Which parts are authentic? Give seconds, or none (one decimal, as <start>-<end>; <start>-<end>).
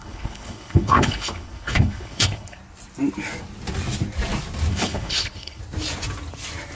2.6-4.7; 5.6-6.8